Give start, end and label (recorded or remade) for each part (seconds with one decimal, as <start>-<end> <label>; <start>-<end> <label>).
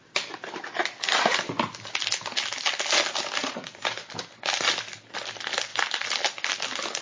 0.0-3.4 recorded; 3.4-4.0 remade; 4.0-7.0 recorded